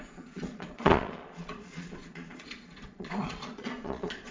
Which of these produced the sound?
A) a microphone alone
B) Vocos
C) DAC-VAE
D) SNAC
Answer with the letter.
B